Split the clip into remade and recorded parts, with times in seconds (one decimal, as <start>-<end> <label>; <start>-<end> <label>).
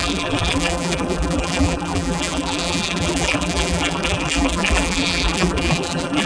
0.0-6.3 remade